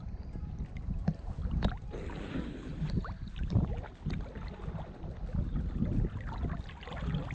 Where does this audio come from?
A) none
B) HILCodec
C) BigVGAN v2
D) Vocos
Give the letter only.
A